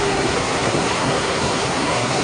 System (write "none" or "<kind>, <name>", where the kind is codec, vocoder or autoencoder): codec, SNAC